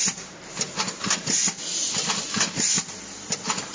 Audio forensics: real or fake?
real